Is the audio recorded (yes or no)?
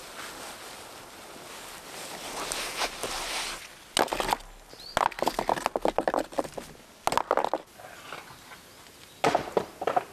yes